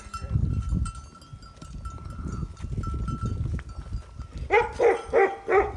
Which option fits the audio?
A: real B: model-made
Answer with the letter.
A